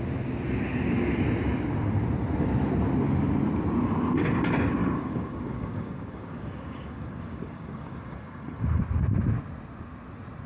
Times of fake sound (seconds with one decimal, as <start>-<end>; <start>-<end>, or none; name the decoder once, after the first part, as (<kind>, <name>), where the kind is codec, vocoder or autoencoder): 4.8-8.8 (codec, DAC)